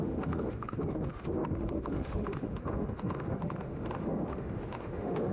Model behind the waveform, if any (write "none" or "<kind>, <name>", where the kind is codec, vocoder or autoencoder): autoencoder, DAC-VAE